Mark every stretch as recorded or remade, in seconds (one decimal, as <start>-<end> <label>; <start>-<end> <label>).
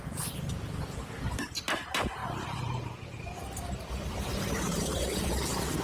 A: 0.0-2.2 recorded; 2.2-5.8 remade